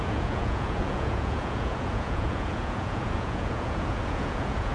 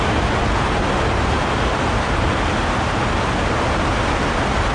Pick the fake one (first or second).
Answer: first